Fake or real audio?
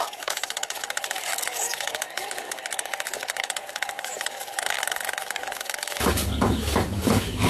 fake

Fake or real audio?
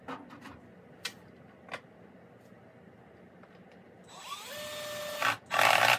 real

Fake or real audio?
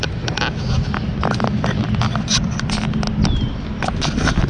real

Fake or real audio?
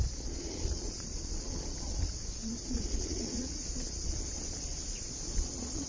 fake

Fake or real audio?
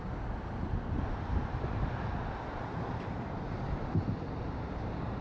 fake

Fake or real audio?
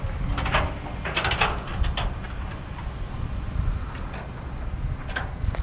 real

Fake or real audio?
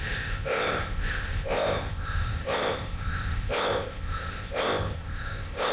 fake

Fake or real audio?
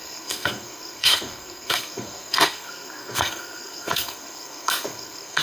fake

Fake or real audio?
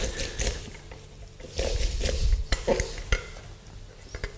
real